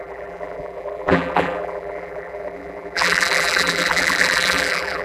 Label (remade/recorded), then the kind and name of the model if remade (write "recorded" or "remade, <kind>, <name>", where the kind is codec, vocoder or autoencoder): remade, vocoder, BigVGAN v2